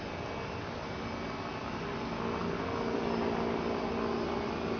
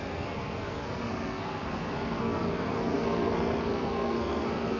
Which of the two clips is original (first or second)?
first